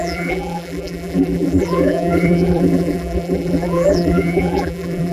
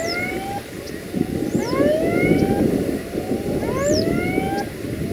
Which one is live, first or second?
second